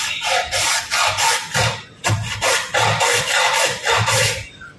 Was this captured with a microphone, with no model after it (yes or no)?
no